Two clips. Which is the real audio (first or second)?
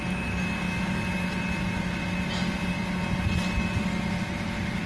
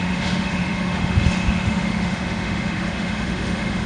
first